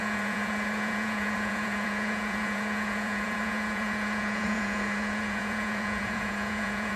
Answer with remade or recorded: remade